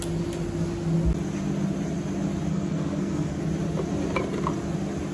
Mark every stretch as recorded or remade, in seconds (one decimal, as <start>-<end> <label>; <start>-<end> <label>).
0.0-2.5 recorded; 2.5-3.4 remade; 3.4-5.1 recorded